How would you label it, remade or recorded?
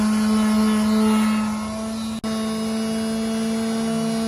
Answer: recorded